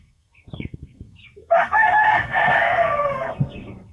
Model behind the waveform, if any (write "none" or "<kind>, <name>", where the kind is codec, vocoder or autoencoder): codec, SNAC